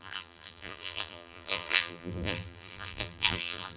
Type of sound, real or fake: fake